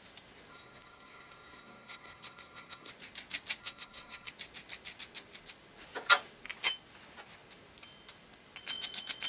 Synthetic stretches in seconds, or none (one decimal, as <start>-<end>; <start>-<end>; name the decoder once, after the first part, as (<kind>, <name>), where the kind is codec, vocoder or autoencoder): 0.5-2.9 (codec, SNAC); 3.6-4.3